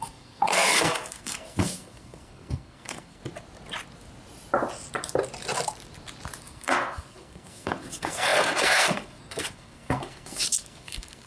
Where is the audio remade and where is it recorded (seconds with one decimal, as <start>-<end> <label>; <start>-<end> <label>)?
0.0-3.2 remade; 3.2-6.4 recorded; 6.4-11.3 remade